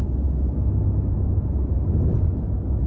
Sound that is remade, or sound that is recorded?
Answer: recorded